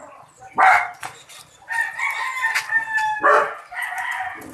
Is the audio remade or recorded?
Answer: recorded